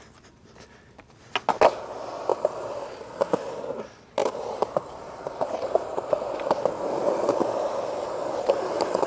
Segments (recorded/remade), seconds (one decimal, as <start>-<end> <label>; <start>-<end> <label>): 0.0-4.2 recorded; 4.2-6.1 remade; 6.1-9.1 recorded